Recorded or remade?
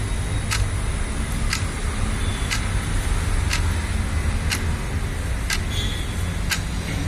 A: recorded